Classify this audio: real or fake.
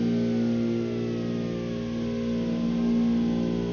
real